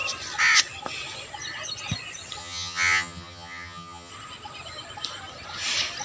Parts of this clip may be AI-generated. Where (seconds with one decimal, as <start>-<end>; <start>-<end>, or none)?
2.4-4.1